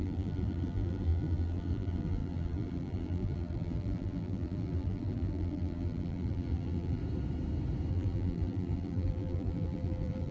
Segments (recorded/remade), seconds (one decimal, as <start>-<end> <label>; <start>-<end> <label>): 0.0-7.0 remade; 7.0-7.9 recorded; 7.9-10.3 remade